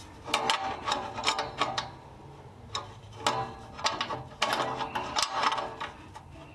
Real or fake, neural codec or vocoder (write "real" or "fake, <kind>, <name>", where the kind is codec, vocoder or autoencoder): real